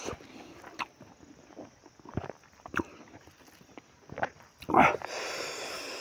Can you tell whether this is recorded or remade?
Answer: recorded